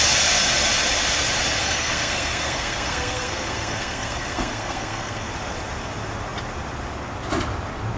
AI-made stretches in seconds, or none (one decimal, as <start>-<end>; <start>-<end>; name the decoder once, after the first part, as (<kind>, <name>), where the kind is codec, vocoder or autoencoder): 1.6-5.3 (codec, SNAC)